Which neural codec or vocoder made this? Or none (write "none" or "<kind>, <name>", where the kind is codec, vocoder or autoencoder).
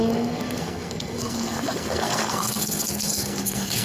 codec, SNAC